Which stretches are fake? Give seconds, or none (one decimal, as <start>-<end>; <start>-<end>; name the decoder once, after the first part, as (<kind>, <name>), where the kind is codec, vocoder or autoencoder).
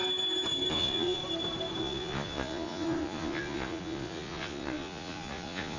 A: 0.7-1.2 (vocoder, Vocos); 1.8-5.8